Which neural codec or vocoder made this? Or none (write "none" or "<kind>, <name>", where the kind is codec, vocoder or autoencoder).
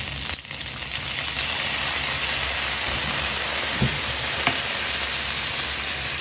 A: none